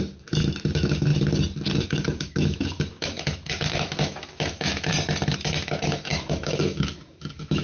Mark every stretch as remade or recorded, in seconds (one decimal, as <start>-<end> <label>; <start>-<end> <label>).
0.0-1.1 remade; 1.1-1.8 recorded; 1.8-4.9 remade; 4.9-5.6 recorded; 5.6-7.6 remade